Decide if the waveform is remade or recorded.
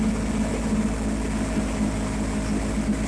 recorded